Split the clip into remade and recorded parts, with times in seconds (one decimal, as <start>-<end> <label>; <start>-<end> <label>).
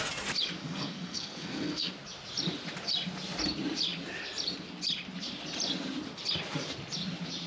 0.0-0.6 recorded; 0.6-1.9 remade; 1.9-7.5 recorded